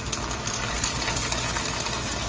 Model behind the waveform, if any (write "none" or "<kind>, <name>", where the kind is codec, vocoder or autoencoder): none